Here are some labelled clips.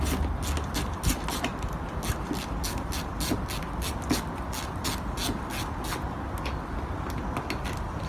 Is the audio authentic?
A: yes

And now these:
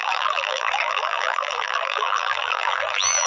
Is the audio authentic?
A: no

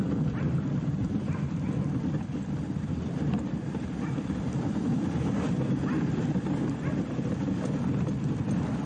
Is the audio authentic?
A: no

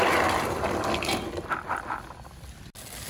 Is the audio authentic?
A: yes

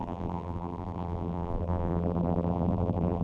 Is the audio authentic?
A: no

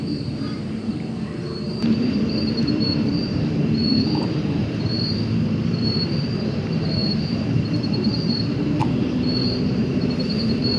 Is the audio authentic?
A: no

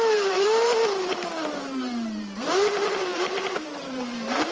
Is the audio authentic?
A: no